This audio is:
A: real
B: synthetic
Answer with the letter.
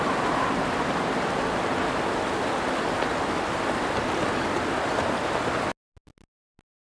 A